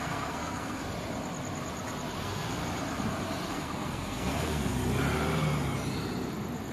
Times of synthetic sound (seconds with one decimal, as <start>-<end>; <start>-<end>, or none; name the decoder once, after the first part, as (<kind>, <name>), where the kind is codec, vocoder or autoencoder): 0.0-0.8 (codec, SNAC); 2.2-2.6; 3.5-4.7